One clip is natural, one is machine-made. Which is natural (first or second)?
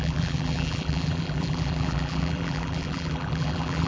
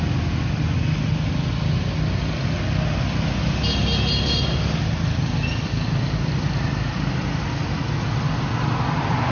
second